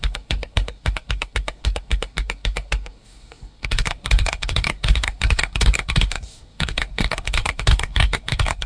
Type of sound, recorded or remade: remade